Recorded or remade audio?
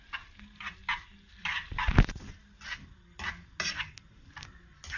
recorded